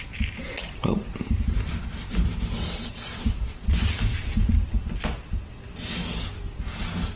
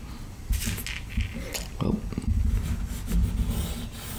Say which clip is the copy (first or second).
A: first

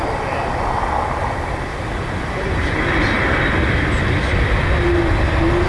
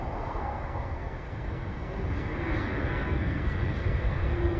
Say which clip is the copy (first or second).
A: second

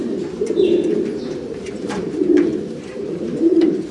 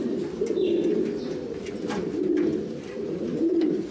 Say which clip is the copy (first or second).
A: first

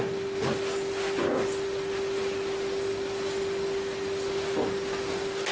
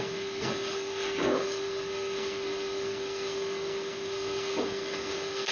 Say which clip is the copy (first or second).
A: second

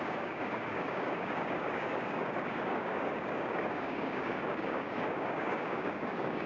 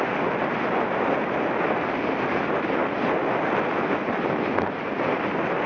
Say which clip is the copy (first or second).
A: first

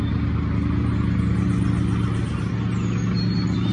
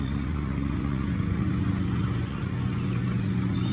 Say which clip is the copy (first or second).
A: second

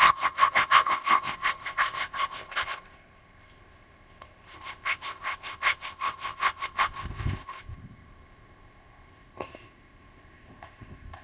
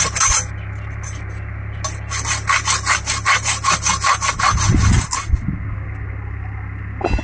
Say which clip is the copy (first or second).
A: first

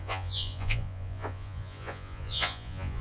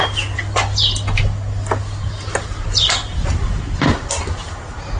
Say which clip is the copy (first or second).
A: first